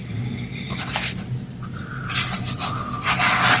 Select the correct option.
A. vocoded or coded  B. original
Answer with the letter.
B